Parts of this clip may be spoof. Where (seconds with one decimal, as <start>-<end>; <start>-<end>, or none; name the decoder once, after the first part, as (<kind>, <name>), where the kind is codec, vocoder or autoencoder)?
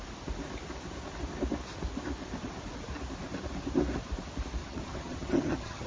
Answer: 4.6-5.9 (vocoder, HiFi-GAN)